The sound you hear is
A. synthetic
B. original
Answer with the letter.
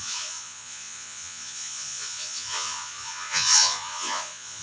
A